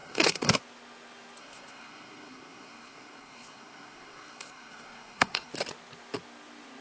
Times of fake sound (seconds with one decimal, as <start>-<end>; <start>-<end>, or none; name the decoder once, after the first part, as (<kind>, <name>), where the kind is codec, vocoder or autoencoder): 0.0-0.6 (codec, SNAC); 1.4-5.5